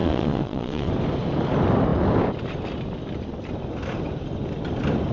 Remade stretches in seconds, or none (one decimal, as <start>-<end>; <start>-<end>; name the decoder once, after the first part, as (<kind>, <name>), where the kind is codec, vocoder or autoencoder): 0.0-0.9 (vocoder, Vocos)